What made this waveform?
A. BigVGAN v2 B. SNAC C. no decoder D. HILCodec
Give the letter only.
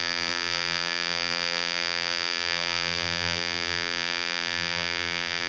A